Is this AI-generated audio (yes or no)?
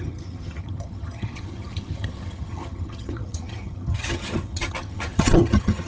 yes